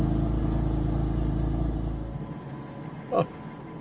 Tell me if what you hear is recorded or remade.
recorded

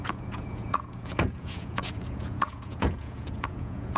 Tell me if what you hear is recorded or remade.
remade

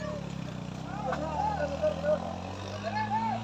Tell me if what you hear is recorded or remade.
recorded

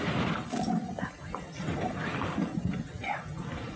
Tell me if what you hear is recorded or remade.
recorded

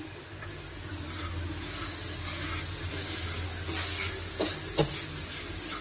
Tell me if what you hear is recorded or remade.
recorded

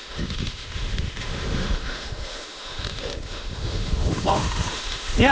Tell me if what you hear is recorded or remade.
remade